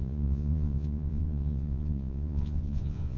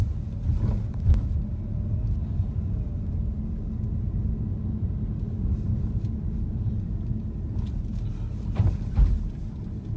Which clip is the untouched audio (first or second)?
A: second